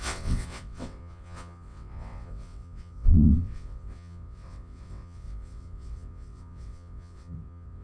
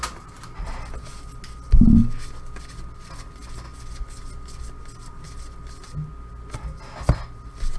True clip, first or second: second